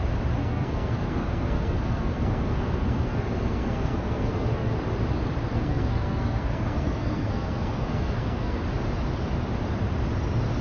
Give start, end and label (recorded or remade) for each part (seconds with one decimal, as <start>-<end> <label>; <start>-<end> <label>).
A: 0.0-0.4 recorded; 0.4-4.7 remade; 4.7-5.5 recorded; 5.5-8.6 remade; 8.6-10.6 recorded